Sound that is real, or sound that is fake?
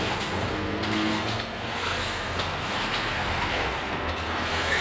fake